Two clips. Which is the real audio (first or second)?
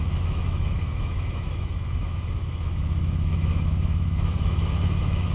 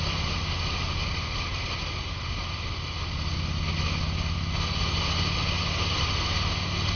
second